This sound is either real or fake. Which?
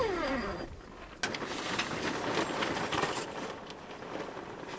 real